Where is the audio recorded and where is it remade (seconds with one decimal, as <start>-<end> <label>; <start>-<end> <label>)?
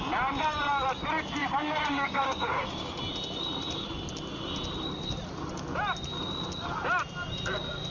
0.0-1.4 recorded; 1.4-3.0 remade; 3.0-7.9 recorded